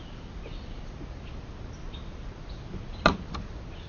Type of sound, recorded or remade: recorded